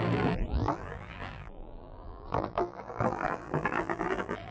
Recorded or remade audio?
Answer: remade